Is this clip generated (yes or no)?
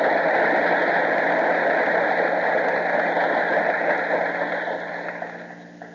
no